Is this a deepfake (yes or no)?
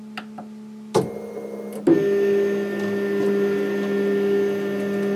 no